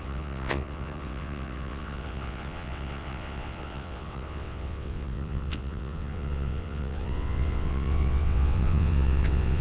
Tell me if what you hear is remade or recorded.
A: remade